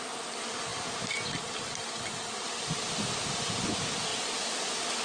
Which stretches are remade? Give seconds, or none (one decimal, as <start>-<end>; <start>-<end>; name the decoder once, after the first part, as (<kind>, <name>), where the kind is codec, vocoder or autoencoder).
4.1-4.6 (vocoder, BigVGAN v2)